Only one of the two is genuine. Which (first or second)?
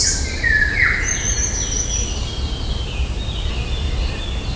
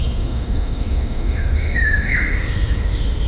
first